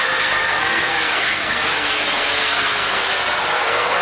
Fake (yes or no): yes